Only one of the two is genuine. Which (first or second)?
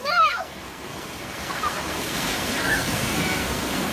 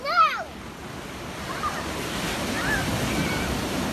second